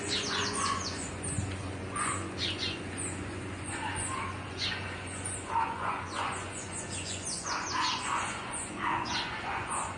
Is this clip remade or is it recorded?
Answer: remade